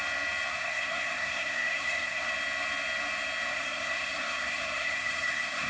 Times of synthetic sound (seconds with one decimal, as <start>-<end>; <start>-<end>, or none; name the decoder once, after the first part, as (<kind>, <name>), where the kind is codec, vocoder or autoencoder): 0.5-2.3 (codec, SNAC); 3.5-5.7